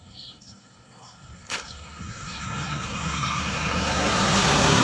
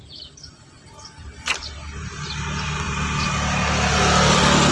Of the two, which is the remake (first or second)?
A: first